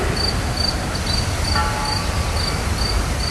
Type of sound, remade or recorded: recorded